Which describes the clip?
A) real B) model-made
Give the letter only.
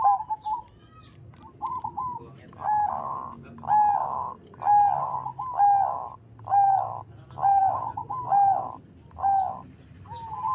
A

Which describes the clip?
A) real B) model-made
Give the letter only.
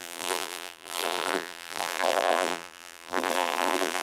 B